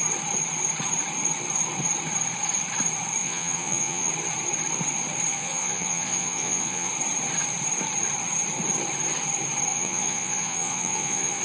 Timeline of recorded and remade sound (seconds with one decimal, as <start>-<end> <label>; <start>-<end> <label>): 0.0-3.2 recorded; 3.2-4.1 remade; 4.1-5.3 recorded; 5.3-6.9 remade; 6.9-9.7 recorded; 9.7-11.4 remade